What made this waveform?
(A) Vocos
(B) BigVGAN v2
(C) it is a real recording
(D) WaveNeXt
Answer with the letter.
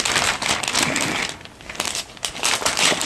C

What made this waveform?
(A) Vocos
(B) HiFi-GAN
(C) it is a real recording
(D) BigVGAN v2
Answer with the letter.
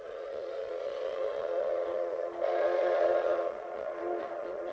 A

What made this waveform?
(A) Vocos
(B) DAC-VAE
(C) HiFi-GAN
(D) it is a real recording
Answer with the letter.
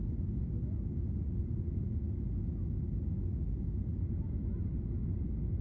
D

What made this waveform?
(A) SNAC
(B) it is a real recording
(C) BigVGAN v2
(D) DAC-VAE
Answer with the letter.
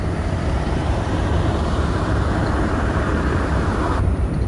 C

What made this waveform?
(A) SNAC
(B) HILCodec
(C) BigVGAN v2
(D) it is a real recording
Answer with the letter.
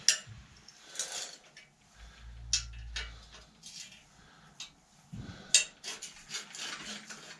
D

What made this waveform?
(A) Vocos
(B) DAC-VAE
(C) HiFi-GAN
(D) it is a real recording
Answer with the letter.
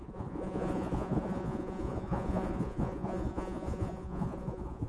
A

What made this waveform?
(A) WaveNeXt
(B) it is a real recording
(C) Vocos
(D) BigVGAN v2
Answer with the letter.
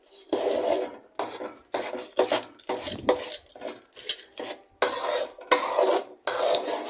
B